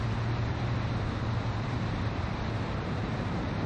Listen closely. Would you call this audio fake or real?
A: fake